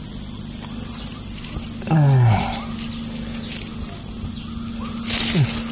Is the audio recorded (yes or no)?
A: yes